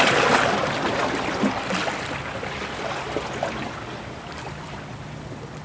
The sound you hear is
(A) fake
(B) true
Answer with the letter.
B